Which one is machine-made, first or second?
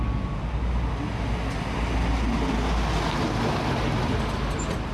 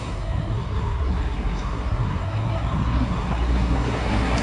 second